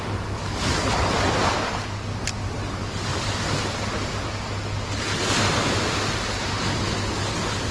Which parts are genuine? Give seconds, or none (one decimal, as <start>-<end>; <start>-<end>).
0.0-7.7